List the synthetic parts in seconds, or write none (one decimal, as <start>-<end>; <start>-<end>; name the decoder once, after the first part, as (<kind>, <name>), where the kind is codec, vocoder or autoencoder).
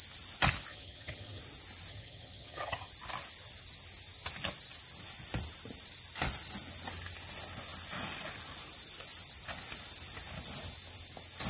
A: 0.7-1.4 (vocoder, HiFi-GAN); 1.9-2.9